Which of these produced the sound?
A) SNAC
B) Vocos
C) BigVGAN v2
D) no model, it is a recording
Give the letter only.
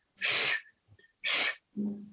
D